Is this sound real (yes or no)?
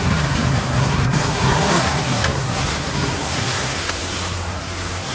no